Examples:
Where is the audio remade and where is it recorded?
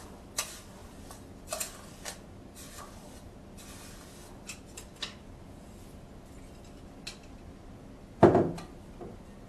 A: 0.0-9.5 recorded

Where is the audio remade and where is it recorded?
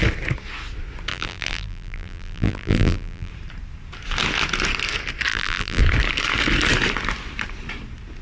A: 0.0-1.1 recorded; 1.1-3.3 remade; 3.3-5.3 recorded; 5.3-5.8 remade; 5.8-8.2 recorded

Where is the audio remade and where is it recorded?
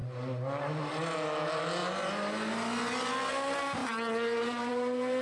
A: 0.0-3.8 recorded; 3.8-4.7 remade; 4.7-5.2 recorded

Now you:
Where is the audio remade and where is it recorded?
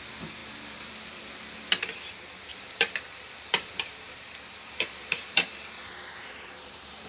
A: 0.0-0.4 recorded; 0.4-1.3 remade; 1.3-2.5 recorded; 2.5-7.1 remade